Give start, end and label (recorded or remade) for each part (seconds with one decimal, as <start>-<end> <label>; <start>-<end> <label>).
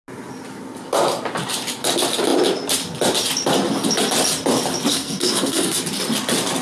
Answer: 0.0-4.9 recorded; 4.9-5.8 remade; 5.8-6.6 recorded